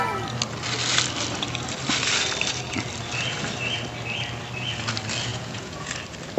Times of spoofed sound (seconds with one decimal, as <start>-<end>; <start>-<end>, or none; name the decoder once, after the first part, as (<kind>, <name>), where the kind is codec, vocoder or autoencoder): 5.3-5.9 (vocoder, Vocos)

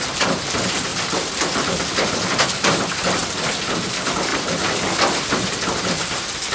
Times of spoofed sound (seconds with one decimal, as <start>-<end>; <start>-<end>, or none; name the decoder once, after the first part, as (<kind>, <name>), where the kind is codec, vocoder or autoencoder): none